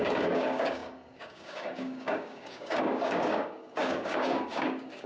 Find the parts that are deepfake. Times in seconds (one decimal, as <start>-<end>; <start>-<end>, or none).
0.0-5.1